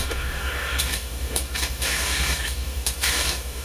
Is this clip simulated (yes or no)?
yes